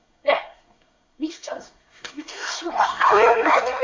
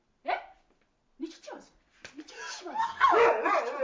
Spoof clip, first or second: first